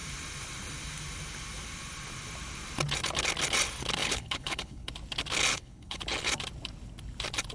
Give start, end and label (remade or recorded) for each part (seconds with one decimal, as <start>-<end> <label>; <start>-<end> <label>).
0.0-4.0 recorded; 4.0-4.9 remade; 4.9-5.5 recorded; 5.5-6.0 remade; 6.0-7.5 recorded